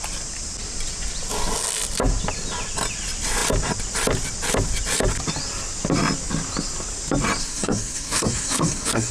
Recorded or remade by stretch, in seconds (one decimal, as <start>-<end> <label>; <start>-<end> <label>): 0.0-7.4 recorded; 7.4-9.1 remade

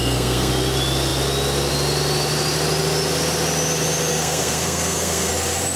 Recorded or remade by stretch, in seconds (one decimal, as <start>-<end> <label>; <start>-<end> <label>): 0.0-0.5 remade; 0.5-4.1 recorded; 4.1-5.3 remade; 5.3-5.8 recorded

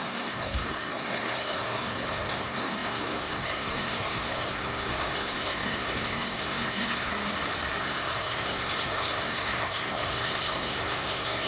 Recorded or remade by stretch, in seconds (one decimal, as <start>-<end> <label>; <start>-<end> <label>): 0.0-7.1 remade; 7.1-7.8 recorded; 7.8-11.5 remade

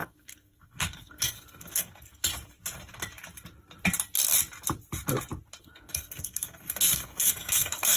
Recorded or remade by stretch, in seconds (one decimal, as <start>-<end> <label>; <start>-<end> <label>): 0.0-2.3 remade; 2.3-5.6 recorded; 5.6-8.0 remade

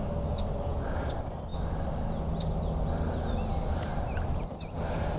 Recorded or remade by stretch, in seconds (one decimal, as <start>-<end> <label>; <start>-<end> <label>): 0.0-5.2 recorded